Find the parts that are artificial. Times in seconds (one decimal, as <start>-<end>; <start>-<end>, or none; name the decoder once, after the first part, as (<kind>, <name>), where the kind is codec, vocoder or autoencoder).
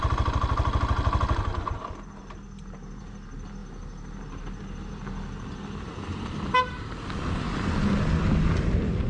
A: none